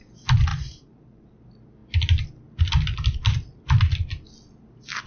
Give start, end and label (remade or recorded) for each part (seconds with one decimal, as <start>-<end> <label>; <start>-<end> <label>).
0.0-0.5 recorded; 0.5-1.4 remade; 1.4-5.1 recorded